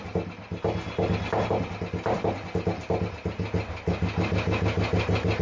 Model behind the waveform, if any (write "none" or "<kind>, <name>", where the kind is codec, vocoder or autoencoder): none